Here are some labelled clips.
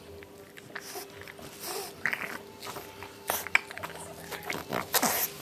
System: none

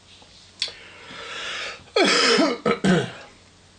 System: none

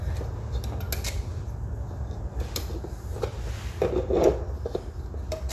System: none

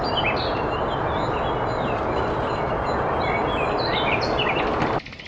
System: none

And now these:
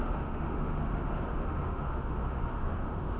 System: autoencoder, DAC-VAE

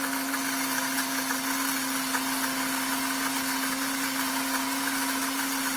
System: none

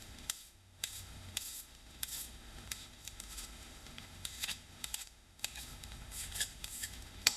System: autoencoder, DAC-VAE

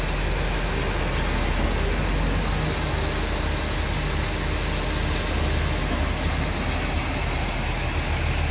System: none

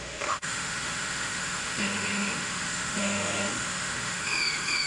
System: autoencoder, DAC-VAE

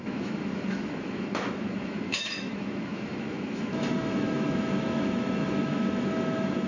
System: autoencoder, DAC-VAE